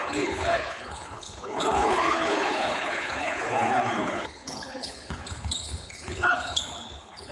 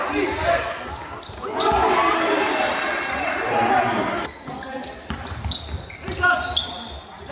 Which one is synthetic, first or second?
first